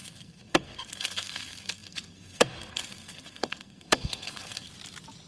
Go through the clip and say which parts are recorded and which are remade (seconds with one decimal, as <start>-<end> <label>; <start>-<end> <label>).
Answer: 0.0-4.7 remade; 4.7-5.3 recorded